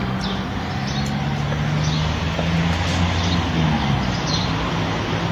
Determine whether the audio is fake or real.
real